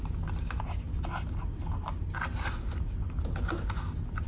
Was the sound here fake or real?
real